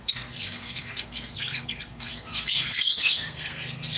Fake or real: fake